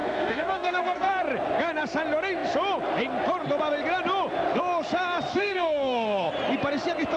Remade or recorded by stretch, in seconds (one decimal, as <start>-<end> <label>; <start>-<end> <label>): 0.0-1.1 remade; 1.1-5.3 recorded; 5.3-6.3 remade; 6.3-7.2 recorded